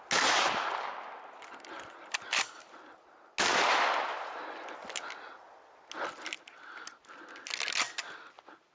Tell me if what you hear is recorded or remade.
recorded